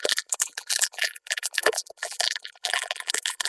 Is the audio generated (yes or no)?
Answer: yes